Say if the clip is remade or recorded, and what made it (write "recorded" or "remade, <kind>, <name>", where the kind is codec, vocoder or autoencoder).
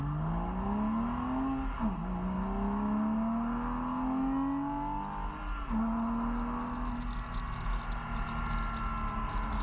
recorded